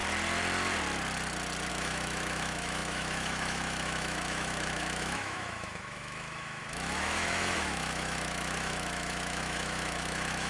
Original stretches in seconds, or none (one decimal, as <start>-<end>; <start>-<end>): 0.0-1.7